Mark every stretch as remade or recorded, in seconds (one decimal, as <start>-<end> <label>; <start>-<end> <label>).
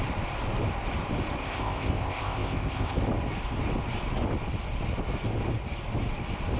0.0-1.4 recorded; 1.4-3.0 remade; 3.0-6.6 recorded